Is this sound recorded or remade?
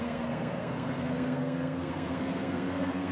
remade